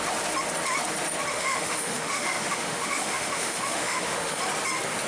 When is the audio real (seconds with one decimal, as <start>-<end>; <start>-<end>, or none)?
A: 0.0-1.3; 4.4-5.1